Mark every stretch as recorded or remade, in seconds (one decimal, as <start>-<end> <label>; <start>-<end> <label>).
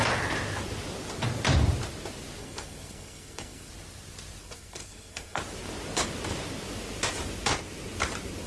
0.0-2.4 recorded; 2.4-3.7 remade; 3.7-4.4 recorded; 4.4-5.4 remade; 5.4-8.5 recorded